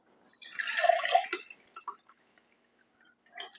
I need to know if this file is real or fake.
real